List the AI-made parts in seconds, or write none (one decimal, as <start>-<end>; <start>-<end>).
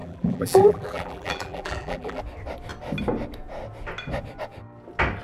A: 0.0-2.2